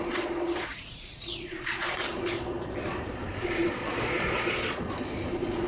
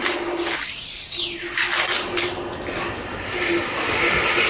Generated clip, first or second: first